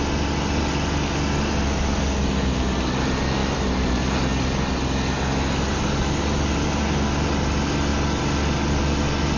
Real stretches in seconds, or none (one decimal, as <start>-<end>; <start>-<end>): 0.0-9.4